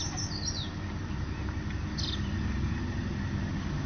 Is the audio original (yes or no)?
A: yes